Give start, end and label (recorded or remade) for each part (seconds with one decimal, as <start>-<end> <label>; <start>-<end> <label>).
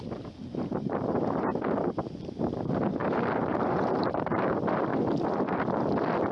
0.0-1.5 remade; 1.5-2.4 recorded; 2.4-3.0 remade; 3.0-3.5 recorded; 3.5-4.9 remade; 4.9-6.3 recorded